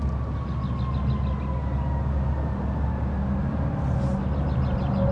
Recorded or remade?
recorded